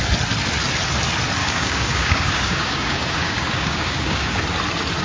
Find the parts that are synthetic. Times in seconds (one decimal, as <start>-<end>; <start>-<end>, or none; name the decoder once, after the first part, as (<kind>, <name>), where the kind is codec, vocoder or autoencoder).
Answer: 1.4-4.4 (codec, DAC)